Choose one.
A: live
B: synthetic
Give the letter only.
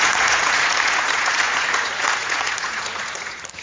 B